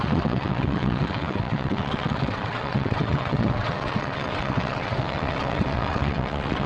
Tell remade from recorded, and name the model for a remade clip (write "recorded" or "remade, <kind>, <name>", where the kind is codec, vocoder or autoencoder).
remade, vocoder, WaveNeXt